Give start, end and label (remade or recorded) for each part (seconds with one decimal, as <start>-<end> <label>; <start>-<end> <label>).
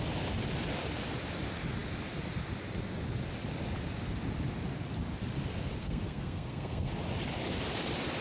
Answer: 0.0-5.8 recorded; 5.8-6.9 remade; 6.9-8.2 recorded